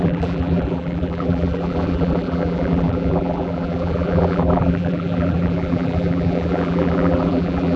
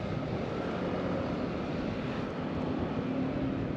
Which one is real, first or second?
second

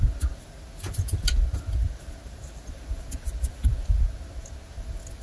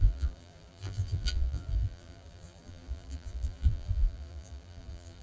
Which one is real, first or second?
first